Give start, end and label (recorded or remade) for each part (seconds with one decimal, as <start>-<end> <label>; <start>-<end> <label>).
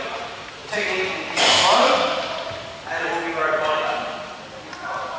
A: 0.0-5.2 recorded